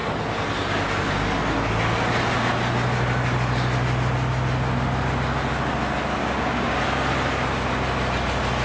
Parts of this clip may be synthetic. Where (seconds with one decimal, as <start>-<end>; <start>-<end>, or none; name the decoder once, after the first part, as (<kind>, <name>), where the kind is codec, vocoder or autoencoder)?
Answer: 6.2-6.8 (codec, DAC)